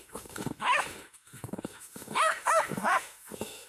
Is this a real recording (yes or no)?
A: no